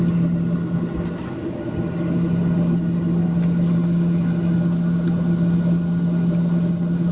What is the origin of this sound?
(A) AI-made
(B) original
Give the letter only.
B